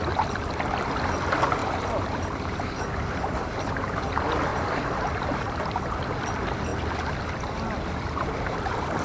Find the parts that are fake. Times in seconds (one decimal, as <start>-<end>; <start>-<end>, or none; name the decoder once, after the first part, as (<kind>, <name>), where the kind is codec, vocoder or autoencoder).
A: 1.6-4.1 (vocoder, BigVGAN v2); 4.5-5.9